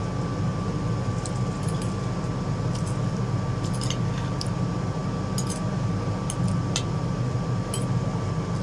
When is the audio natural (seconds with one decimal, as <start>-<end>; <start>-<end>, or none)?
0.0-8.6